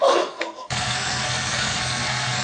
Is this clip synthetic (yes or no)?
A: yes